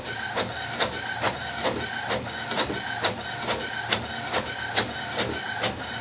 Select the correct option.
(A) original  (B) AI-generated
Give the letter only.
A